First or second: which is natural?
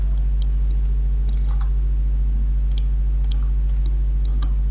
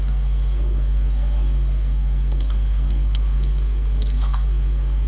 first